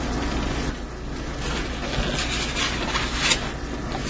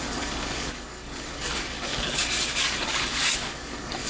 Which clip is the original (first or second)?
first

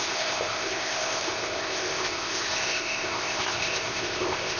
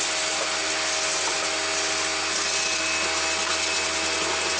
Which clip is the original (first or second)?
second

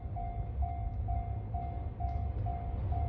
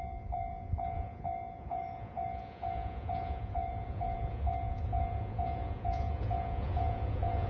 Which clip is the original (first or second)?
first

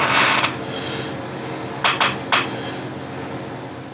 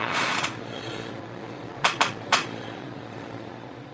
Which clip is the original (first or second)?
first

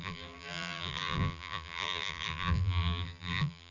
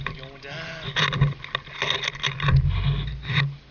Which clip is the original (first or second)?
second